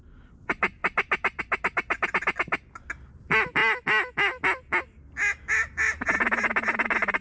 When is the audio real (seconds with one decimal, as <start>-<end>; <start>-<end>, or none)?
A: 0.0-7.2